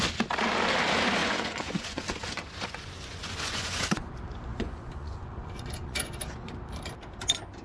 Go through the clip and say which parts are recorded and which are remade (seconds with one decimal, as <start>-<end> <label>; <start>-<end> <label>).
0.0-1.2 recorded; 1.2-4.0 remade; 4.0-4.5 recorded; 4.5-6.5 remade; 6.5-7.6 recorded